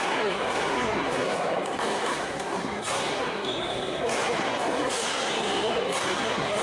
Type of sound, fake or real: fake